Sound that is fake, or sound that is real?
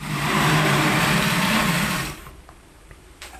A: fake